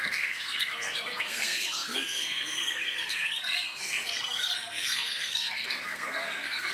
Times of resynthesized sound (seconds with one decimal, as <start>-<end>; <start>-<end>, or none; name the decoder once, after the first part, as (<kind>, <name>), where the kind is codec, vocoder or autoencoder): 0.0-6.7 (codec, SNAC)